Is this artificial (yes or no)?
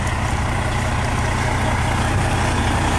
no